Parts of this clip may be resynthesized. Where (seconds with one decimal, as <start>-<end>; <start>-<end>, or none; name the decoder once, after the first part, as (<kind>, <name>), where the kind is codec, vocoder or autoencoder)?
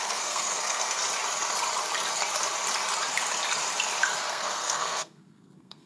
0.0-1.0 (codec, SNAC); 4.3-5.9